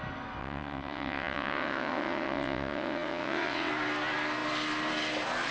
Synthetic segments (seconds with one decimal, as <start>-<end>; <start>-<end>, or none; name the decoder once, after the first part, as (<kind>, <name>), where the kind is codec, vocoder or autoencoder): 0.4-3.7 (vocoder, WaveNeXt)